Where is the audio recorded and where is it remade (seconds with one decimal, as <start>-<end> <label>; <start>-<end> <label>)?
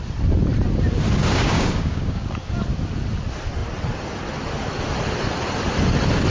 0.0-1.2 recorded; 1.2-2.3 remade; 2.3-6.3 recorded